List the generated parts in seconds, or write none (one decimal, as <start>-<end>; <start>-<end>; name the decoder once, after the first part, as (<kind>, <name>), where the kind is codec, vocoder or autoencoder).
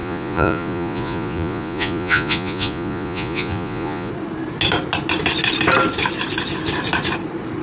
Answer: 0.0-4.1 (vocoder, Vocos)